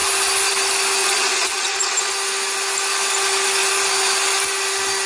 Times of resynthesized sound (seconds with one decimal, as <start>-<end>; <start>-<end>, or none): 1.0-2.1